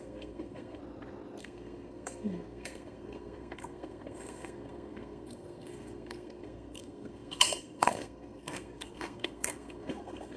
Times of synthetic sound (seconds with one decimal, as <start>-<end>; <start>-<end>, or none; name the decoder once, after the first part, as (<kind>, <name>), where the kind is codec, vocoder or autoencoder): 0.0-0.8 (codec, SNAC); 1.4-10.4